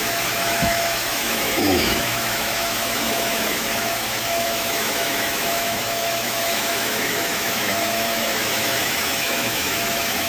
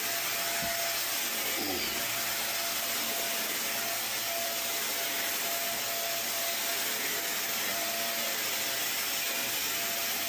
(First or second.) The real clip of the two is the second